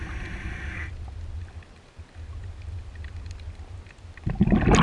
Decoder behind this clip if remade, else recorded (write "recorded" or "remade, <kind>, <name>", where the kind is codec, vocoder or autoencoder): recorded